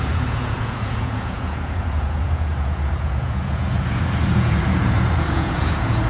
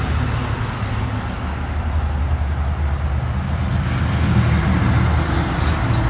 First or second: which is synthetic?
first